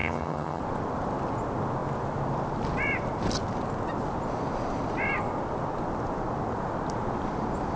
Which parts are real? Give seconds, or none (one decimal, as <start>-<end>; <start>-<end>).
0.6-7.8